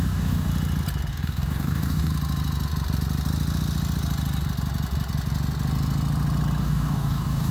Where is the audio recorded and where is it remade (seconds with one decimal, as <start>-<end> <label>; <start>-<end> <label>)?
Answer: 0.0-0.5 remade; 0.5-1.1 recorded; 1.1-2.1 remade; 2.1-6.6 recorded; 6.6-7.5 remade